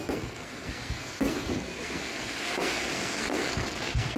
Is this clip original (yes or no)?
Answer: no